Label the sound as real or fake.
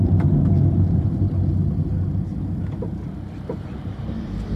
real